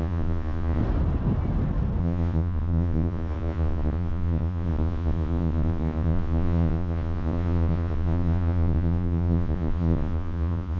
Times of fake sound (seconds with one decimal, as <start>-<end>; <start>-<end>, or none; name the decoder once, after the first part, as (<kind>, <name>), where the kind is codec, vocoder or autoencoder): 0.0-0.8 (vocoder, Vocos); 2.0-10.8